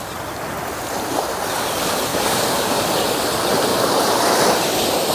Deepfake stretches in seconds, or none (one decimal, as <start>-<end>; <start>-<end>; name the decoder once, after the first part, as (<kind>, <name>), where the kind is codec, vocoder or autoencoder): 2.1-2.9 (codec, DAC); 3.7-4.4